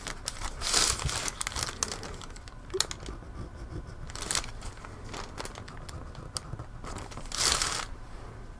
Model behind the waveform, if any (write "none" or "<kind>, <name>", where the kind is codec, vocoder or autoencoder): none